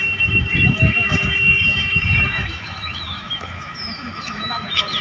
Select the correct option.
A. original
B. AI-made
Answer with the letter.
B